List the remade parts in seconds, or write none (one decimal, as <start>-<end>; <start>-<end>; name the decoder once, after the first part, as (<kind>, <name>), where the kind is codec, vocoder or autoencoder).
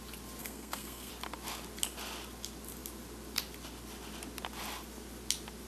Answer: 0.4-1.1 (codec, SNAC)